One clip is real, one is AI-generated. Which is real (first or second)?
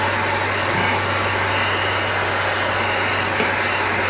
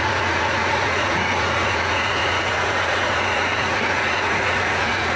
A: first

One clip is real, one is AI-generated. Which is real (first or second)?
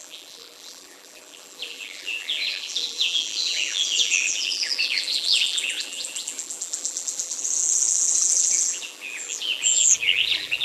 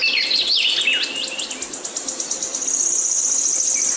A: second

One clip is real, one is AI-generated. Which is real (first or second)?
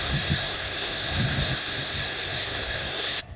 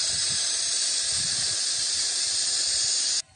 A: second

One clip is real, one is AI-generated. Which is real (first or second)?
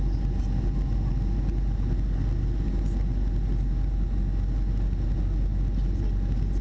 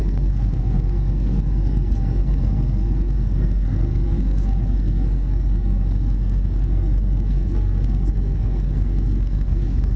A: first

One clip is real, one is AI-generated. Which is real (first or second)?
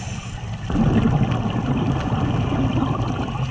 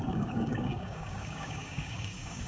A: first